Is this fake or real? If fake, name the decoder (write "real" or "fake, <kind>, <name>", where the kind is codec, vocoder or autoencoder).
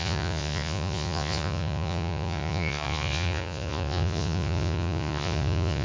fake, vocoder, Vocos